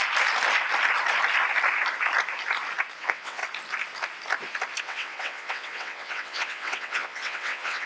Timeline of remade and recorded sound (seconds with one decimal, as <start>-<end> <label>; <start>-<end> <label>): 0.0-3.0 recorded; 3.0-3.4 remade; 3.4-4.8 recorded; 4.8-7.9 remade